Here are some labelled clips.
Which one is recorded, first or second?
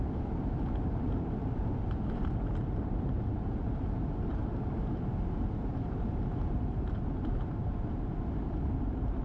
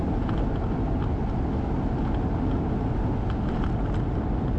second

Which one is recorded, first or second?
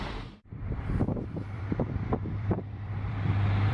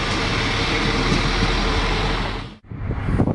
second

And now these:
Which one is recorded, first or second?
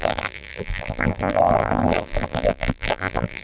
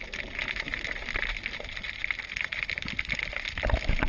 second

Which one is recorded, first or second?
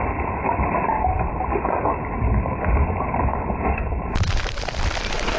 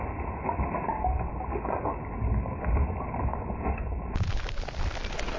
second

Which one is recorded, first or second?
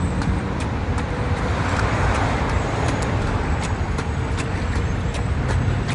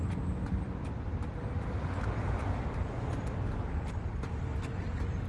second